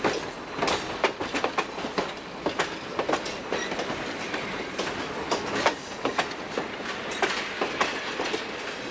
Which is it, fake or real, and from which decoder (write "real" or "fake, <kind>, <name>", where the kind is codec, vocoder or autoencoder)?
real